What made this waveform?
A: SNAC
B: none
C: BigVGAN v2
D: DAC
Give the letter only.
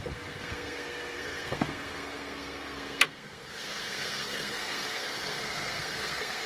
A